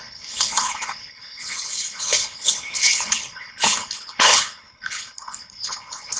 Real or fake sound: fake